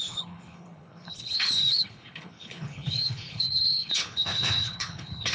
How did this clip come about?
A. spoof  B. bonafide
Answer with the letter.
A